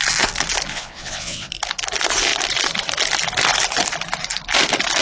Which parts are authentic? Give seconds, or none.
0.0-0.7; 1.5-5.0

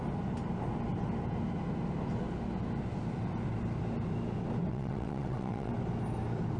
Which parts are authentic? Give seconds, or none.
0.0-4.7; 5.7-6.6

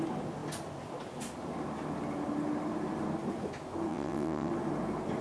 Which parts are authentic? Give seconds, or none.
0.0-3.9; 4.5-5.2

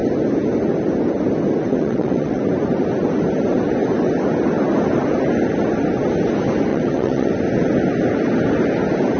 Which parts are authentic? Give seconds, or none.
0.0-1.6; 2.4-6.7; 7.3-9.2

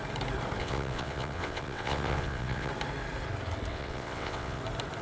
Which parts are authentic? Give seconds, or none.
0.0-0.6; 2.7-3.7; 4.6-5.0